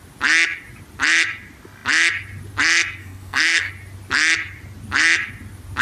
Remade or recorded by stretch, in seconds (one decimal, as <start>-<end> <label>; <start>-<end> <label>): 0.0-3.0 recorded; 3.0-3.7 remade; 3.7-5.8 recorded